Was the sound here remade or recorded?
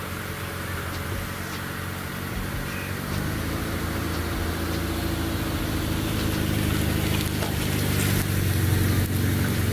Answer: recorded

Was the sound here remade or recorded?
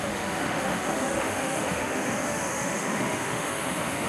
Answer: remade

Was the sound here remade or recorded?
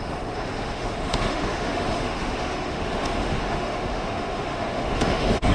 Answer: remade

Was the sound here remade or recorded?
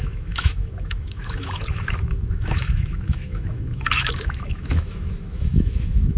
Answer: remade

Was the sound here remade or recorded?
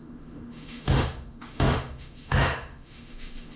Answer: remade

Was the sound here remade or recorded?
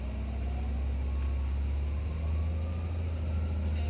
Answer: recorded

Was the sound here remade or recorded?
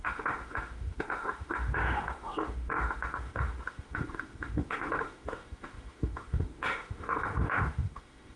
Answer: remade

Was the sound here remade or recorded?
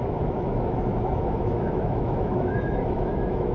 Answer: remade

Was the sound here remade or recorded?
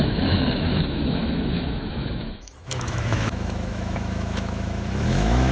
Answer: remade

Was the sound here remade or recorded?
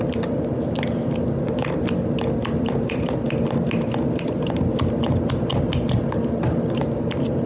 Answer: recorded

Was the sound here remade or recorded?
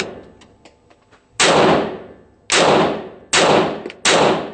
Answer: recorded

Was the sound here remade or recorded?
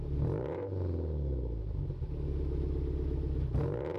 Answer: recorded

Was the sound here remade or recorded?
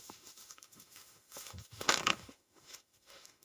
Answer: remade